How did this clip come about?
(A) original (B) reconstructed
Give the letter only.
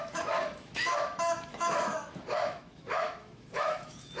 B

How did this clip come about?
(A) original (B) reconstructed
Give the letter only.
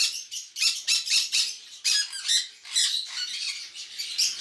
B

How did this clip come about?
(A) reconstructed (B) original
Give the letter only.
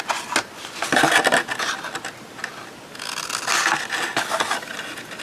B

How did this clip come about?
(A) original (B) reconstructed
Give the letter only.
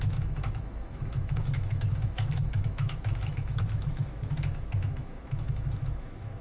B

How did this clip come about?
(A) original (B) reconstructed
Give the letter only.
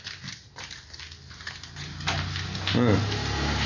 A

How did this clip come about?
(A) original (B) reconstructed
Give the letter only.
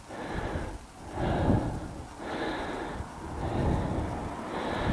A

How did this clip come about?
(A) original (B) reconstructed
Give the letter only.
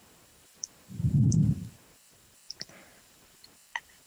B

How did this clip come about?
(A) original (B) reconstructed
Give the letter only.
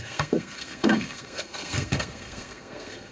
B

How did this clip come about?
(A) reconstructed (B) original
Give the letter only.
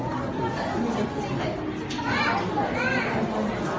B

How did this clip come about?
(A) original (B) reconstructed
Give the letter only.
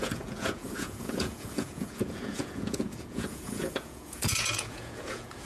B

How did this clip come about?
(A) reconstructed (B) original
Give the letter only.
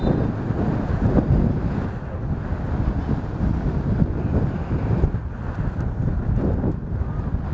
B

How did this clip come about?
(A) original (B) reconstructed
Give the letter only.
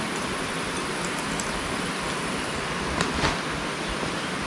A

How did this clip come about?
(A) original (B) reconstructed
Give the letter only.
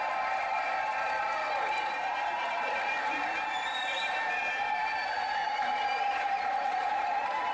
B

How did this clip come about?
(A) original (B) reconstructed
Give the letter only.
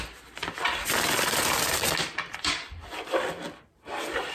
B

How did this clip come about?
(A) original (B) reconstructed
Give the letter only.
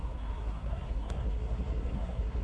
B